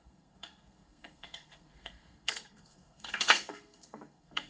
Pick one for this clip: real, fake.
fake